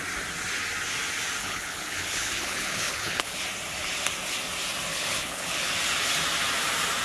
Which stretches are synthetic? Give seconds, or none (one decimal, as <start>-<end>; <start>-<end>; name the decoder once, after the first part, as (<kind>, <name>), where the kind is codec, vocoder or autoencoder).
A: 1.4-3.4 (codec, HILCodec); 4.9-5.7